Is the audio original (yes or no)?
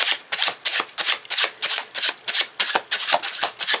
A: yes